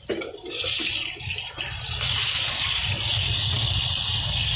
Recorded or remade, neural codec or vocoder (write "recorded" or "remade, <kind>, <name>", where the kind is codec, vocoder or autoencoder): recorded